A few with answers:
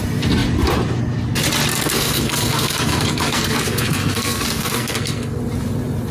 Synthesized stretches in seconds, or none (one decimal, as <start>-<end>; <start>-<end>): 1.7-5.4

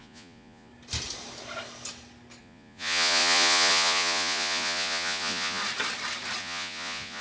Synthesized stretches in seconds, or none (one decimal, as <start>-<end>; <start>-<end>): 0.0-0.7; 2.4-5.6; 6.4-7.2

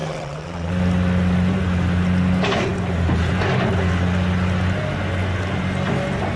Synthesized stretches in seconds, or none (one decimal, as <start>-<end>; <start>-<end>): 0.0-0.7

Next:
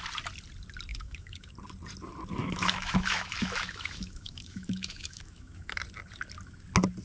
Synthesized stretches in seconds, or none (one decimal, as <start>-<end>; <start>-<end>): 0.9-1.5; 2.4-5.8

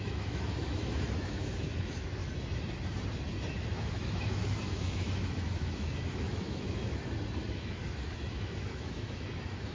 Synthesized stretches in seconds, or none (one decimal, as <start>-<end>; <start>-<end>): 0.0-2.2; 3.7-7.0; 7.5-9.7